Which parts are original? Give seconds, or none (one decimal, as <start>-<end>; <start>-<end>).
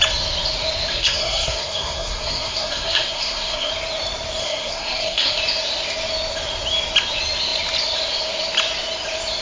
0.0-0.9; 3.7-4.4; 5.4-9.4